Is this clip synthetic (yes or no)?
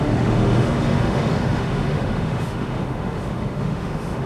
yes